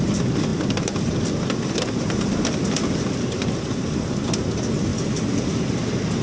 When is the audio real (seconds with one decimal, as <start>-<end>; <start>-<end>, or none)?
0.0-6.2